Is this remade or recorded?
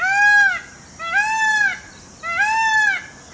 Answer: recorded